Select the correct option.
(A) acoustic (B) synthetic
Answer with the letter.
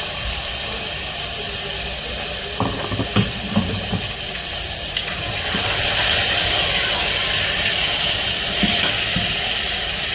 A